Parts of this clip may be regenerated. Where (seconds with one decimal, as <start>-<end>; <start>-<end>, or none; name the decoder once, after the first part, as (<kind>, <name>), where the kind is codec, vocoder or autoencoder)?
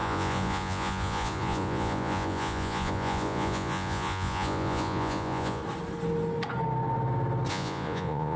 0.0-5.6 (vocoder, Vocos); 7.5-8.4